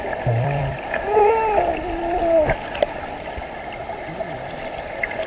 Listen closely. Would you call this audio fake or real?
fake